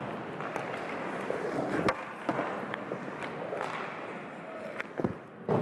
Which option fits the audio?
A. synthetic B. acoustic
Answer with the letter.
B